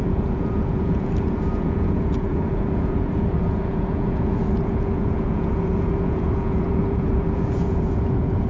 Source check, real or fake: fake